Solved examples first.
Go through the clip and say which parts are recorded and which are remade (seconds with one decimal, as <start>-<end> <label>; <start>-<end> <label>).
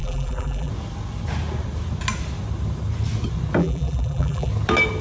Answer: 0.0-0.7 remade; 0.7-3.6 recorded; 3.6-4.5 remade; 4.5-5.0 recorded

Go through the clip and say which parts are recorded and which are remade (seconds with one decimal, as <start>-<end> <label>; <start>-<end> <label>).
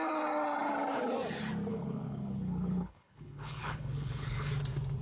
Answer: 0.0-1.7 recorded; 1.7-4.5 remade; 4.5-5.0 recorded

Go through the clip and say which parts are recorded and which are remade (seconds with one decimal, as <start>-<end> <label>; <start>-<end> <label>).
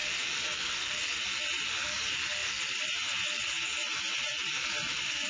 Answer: 0.0-1.7 remade; 1.7-2.4 recorded; 2.4-2.9 remade; 2.9-3.7 recorded; 3.7-5.3 remade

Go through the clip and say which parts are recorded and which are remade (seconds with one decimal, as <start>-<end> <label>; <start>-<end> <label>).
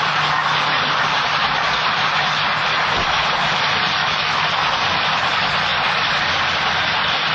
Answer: 0.0-4.0 recorded; 4.0-4.5 remade; 4.5-7.3 recorded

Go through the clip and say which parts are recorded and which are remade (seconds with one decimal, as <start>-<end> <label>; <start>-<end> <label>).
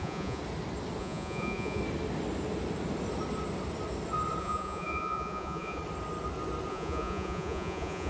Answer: 0.0-0.4 remade; 0.4-1.0 recorded; 1.0-1.8 remade; 1.8-4.4 recorded; 4.4-5.8 remade; 5.8-6.7 recorded; 6.7-8.1 remade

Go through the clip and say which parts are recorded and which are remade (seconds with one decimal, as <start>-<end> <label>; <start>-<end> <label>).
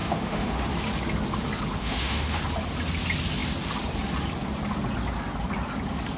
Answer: 0.0-0.7 remade; 0.7-1.8 recorded; 1.8-2.4 remade; 2.4-6.2 recorded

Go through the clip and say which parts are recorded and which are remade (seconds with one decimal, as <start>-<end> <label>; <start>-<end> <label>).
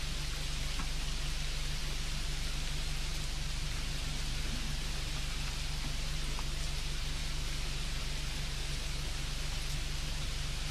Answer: 0.0-10.7 recorded